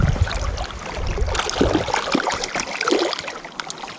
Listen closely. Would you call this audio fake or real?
real